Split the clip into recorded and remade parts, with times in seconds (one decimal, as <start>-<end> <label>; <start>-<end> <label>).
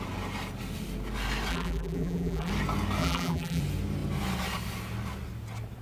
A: 0.0-1.5 recorded; 1.5-2.5 remade; 2.5-3.0 recorded; 3.0-3.6 remade; 3.6-5.8 recorded